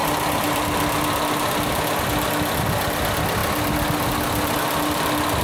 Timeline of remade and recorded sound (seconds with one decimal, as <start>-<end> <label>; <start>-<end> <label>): 0.0-5.4 recorded